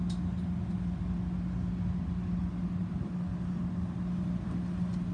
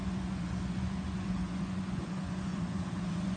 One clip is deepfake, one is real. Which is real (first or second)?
first